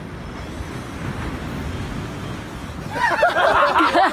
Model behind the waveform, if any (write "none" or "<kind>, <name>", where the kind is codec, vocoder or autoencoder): none